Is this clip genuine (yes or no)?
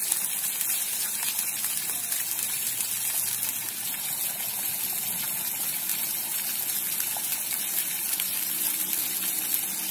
yes